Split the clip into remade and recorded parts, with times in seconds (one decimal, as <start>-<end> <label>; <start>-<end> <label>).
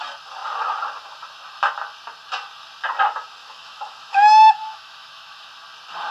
0.0-3.4 recorded; 3.4-5.5 remade; 5.5-6.1 recorded